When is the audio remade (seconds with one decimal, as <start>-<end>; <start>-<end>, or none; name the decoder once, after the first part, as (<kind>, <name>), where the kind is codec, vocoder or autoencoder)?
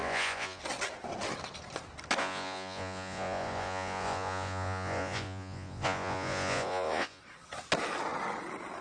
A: 0.0-0.6 (vocoder, Vocos); 2.2-7.2